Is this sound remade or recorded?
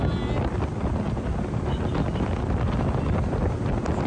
recorded